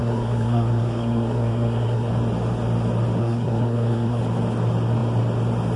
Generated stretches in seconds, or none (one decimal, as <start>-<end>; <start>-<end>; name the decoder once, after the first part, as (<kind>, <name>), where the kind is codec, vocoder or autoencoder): 0.0-2.1 (codec, SNAC); 3.2-4.2